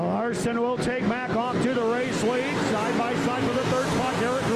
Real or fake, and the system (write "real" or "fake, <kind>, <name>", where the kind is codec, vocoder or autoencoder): real